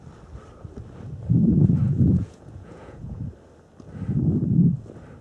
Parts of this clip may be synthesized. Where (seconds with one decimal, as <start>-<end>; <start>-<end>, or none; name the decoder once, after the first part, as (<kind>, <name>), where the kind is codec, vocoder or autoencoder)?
1.8-3.2 (vocoder, Vocos)